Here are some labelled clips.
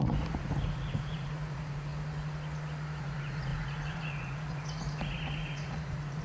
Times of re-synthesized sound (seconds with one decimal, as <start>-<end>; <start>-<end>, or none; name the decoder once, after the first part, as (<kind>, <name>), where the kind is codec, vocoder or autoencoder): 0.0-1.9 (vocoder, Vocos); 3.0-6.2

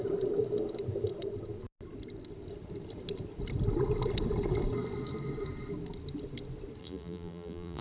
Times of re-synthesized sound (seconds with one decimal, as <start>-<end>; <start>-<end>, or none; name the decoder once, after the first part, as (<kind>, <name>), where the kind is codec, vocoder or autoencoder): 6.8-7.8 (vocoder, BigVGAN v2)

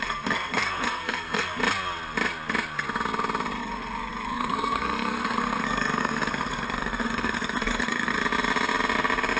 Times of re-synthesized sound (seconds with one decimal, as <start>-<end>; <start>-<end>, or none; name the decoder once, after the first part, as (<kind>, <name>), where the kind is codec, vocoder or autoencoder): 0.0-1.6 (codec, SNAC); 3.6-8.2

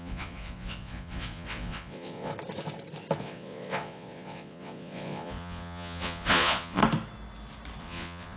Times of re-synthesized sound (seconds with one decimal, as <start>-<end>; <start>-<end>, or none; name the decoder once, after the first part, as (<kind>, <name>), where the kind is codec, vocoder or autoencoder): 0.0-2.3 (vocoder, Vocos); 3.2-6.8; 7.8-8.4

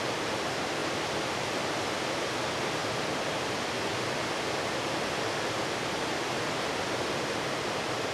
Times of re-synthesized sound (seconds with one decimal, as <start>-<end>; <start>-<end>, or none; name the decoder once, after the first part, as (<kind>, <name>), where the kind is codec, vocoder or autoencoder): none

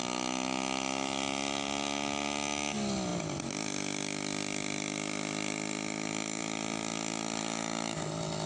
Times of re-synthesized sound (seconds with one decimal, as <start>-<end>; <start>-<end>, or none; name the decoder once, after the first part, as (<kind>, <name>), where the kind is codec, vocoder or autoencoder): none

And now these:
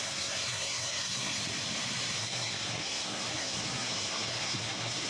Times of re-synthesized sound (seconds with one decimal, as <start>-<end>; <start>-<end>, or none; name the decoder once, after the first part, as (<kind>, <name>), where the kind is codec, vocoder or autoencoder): 0.0-1.4 (codec, SNAC); 2.2-5.1